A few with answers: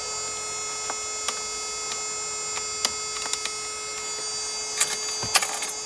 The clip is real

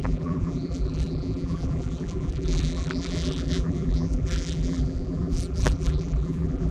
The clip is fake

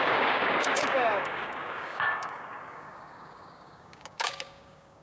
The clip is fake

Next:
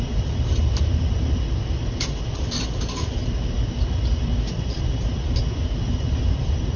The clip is real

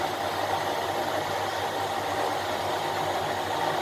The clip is real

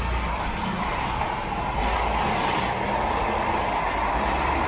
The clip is real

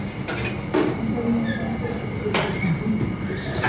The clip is real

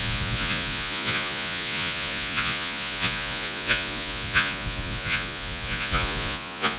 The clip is fake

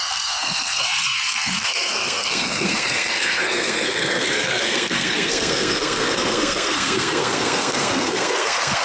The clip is fake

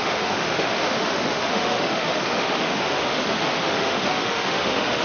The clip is fake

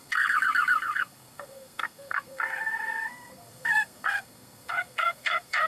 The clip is fake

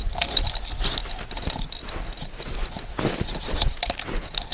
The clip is real